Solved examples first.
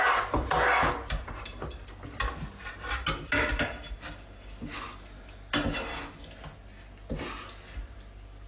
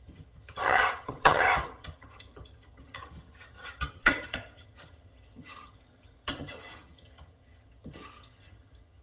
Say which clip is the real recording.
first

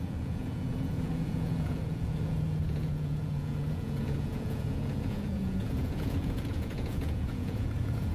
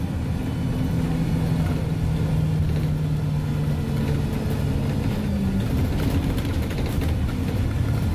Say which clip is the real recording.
second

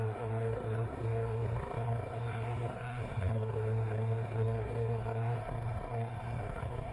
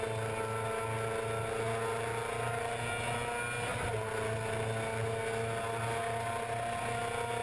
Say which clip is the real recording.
second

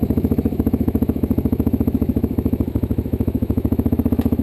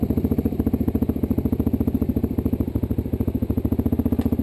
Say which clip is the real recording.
second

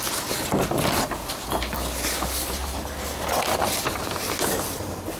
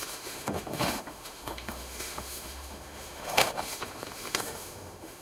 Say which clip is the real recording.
first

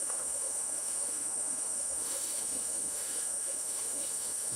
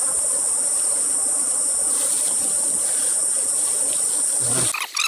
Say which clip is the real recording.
second